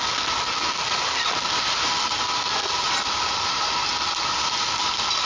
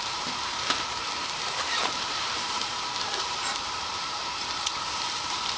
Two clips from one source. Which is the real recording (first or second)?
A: first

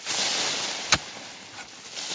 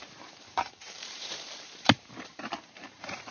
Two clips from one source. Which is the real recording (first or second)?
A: first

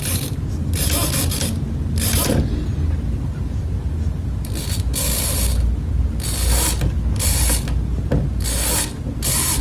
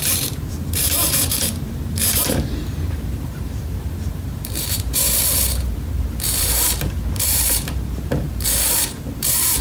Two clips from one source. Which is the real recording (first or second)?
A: first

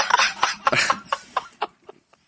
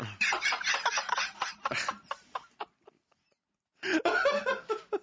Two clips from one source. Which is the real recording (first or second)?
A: second